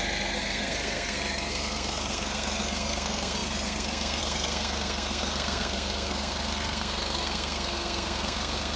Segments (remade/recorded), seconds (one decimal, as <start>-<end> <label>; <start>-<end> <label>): 0.0-8.8 remade